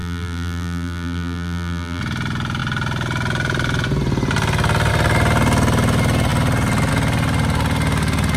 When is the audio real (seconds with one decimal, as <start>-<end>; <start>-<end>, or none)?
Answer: 2.0-8.4